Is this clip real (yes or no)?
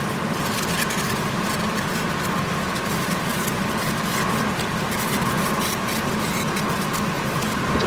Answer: yes